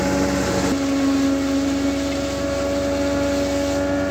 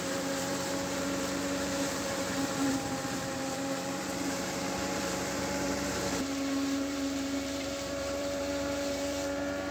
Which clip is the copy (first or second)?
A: second